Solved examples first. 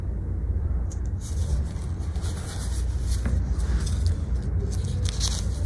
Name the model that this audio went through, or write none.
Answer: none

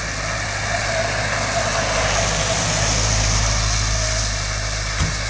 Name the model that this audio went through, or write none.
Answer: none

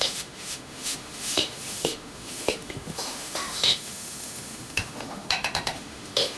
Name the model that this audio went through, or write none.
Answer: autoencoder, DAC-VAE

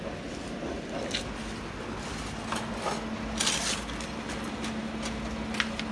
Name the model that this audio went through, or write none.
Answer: none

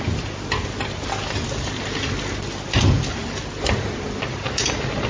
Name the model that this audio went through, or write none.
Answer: none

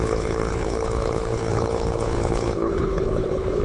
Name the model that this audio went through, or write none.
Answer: codec, HILCodec